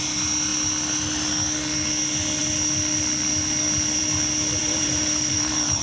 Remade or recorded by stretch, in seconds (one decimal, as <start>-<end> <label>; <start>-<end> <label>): 0.0-4.6 recorded; 4.6-5.8 remade